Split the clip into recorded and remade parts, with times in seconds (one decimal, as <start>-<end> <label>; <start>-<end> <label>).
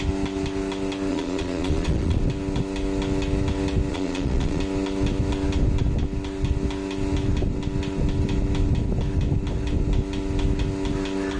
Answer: 0.0-1.1 recorded; 1.1-2.2 remade; 2.2-3.9 recorded; 3.9-4.6 remade; 4.6-11.4 recorded